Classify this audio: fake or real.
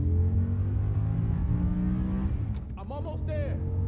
real